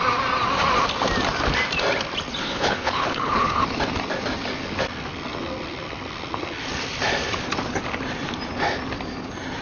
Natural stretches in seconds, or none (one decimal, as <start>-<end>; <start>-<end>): 0.0-2.4; 3.6-9.6